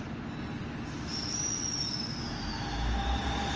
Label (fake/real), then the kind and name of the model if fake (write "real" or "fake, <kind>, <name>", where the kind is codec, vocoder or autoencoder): real